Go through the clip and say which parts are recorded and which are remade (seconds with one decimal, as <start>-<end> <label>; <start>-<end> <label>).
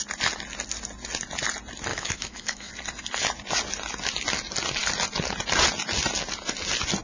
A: 0.0-1.9 recorded; 1.9-2.7 remade; 2.7-7.0 recorded